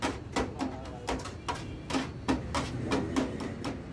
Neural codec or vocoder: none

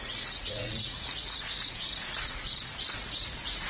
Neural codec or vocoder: vocoder, Vocos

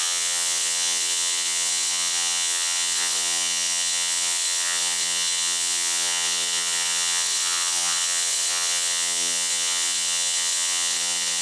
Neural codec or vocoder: vocoder, WaveNeXt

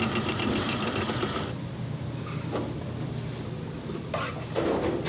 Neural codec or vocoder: vocoder, BigVGAN v2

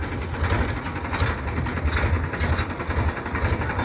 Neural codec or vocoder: none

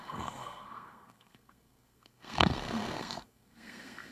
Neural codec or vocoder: codec, SNAC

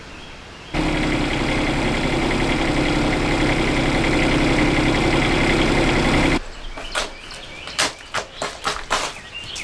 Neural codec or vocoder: none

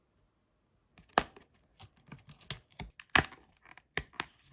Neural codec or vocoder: none